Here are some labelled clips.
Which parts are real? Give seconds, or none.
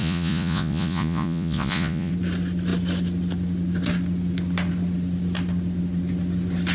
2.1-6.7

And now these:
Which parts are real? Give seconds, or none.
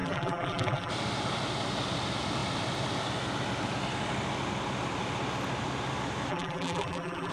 0.9-6.3